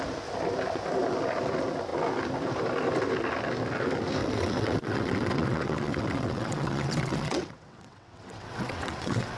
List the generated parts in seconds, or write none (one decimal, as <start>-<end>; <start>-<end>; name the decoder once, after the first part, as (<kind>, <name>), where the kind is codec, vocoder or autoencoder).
4.2-9.4 (vocoder, WaveNeXt)

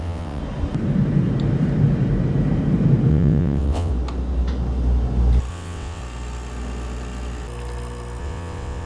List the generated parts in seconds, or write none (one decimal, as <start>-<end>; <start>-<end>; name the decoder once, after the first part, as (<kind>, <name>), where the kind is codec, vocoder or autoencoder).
0.0-0.4 (vocoder, WaveNeXt); 3.1-3.9; 5.5-6.0; 8.2-8.9

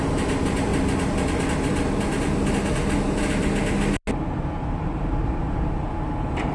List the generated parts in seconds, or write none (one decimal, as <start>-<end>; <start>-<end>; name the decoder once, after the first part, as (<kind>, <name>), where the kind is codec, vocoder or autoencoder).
0.0-0.7 (vocoder, BigVGAN v2); 4.6-6.5